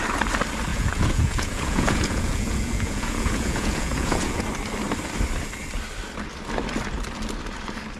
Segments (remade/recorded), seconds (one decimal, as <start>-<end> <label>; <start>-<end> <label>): 0.0-0.7 recorded; 0.7-4.4 remade; 4.4-8.0 recorded